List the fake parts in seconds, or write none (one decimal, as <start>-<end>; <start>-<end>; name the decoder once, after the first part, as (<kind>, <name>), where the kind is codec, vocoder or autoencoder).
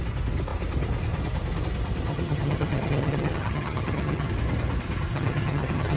2.1-4.3 (vocoder, HiFi-GAN); 5.1-6.0